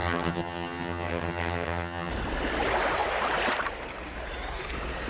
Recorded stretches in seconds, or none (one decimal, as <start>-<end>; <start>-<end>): 2.1-5.1